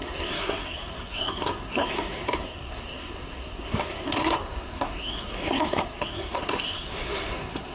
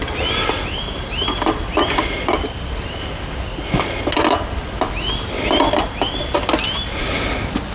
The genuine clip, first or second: second